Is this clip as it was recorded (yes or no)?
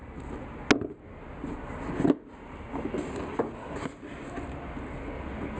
yes